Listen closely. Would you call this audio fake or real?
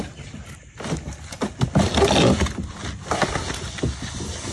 real